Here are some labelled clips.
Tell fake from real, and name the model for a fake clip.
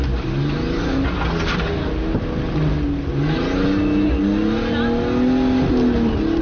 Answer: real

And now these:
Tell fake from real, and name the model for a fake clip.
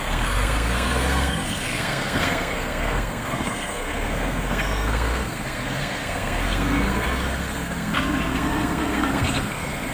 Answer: fake, codec, SNAC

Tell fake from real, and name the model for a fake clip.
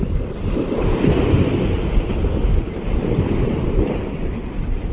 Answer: real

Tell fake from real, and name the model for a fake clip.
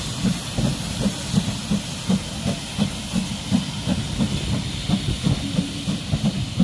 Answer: real